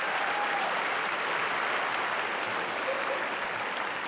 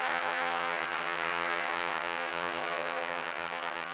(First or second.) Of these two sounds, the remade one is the second